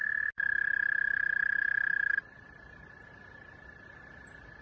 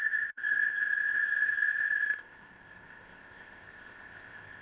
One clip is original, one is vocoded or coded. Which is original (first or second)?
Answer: first